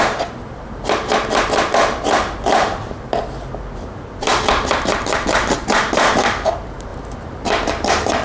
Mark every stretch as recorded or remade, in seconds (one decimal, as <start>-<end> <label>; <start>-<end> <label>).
0.0-4.3 remade; 4.3-4.8 recorded; 4.8-8.2 remade